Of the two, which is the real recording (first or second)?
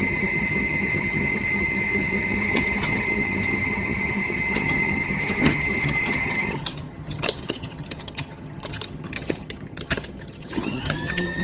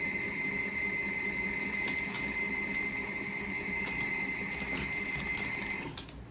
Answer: second